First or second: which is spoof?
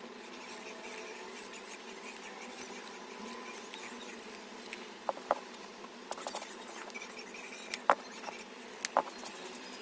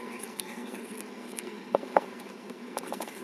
second